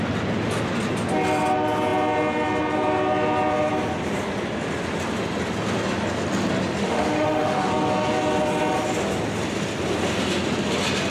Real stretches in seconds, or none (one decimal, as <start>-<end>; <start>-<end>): 0.0-6.8; 7.7-11.1